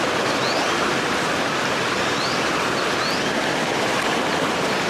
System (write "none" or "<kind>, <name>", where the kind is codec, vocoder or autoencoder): none